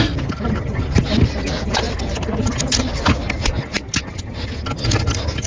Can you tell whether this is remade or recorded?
recorded